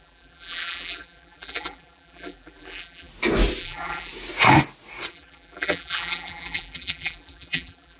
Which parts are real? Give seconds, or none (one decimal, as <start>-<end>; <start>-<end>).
3.1-3.6; 4.1-5.1